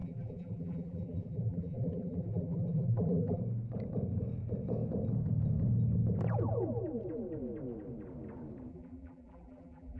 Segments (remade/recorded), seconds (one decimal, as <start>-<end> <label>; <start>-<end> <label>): 0.0-3.4 remade; 3.4-8.7 recorded; 8.7-10.0 remade